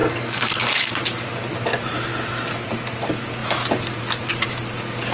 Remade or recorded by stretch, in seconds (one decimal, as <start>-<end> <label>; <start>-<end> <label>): 0.0-0.8 remade; 0.8-5.1 recorded